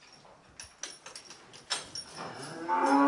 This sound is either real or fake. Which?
real